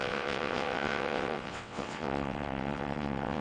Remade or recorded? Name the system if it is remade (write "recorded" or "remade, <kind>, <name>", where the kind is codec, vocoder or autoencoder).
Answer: remade, vocoder, WaveNeXt